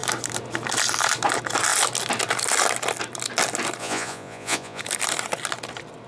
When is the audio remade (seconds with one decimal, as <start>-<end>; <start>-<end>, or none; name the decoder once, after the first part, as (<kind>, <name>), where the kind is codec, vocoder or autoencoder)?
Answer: 3.8-4.8 (vocoder, Vocos)